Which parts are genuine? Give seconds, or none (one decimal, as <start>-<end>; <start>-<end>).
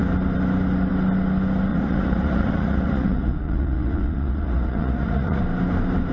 0.0-1.7; 5.4-6.1